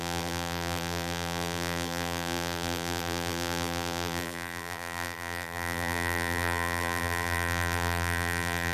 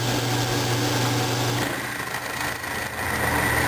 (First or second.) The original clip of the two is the second